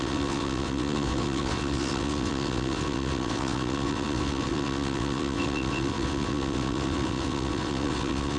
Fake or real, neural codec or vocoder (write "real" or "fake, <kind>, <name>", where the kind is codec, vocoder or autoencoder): fake, vocoder, WaveNeXt